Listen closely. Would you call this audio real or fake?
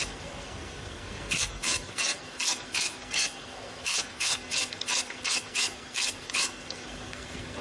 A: fake